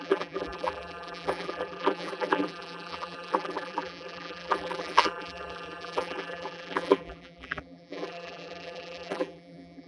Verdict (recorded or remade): remade